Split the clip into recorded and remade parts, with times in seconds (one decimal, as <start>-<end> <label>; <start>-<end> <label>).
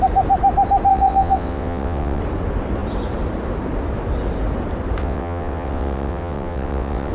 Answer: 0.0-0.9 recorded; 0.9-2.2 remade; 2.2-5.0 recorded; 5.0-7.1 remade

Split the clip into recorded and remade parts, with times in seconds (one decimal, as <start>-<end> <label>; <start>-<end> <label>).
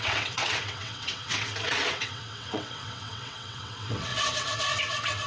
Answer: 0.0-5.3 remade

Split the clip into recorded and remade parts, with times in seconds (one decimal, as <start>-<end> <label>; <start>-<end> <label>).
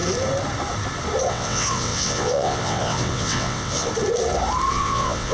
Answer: 0.0-1.3 recorded; 1.3-3.9 remade; 3.9-4.7 recorded; 4.7-5.3 remade